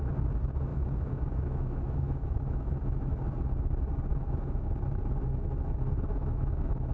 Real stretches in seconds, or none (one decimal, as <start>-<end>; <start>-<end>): 0.0-0.7; 3.1-4.1; 4.7-6.1